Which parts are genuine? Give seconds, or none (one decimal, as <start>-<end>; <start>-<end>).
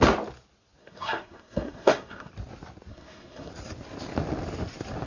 0.0-0.8; 2.3-2.9; 3.5-5.1